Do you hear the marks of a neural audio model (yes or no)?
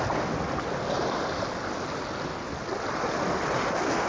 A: no